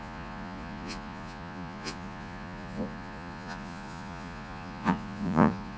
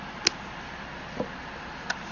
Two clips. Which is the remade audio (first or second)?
first